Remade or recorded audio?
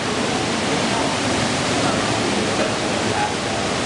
recorded